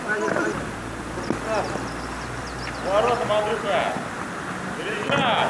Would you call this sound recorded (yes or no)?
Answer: yes